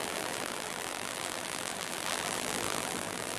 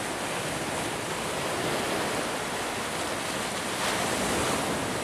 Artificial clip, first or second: first